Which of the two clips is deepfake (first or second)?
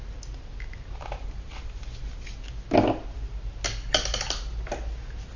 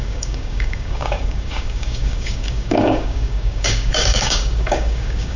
second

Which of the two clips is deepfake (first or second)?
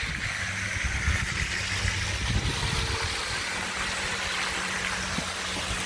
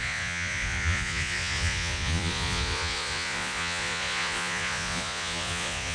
second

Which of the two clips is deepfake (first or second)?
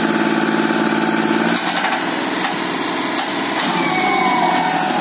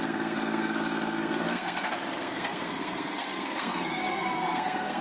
second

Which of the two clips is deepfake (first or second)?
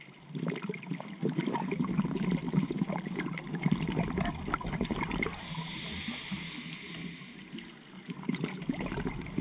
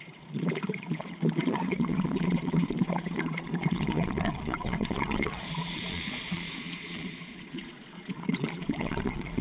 second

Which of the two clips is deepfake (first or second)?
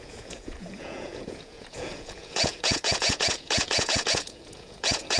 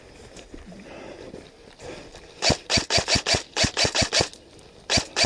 first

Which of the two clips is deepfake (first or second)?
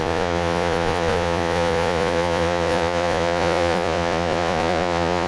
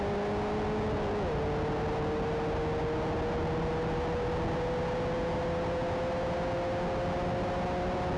first